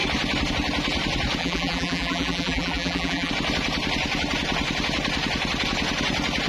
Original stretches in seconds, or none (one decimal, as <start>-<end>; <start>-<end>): 0.0-1.4; 3.3-6.5